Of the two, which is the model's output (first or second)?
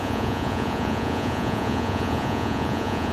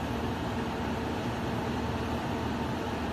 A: first